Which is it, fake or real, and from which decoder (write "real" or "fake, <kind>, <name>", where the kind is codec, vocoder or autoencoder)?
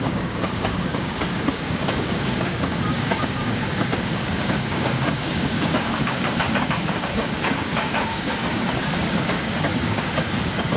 fake, codec, DAC